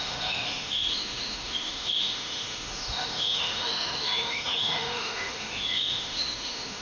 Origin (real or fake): fake